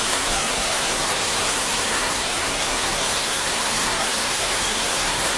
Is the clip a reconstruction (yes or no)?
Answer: yes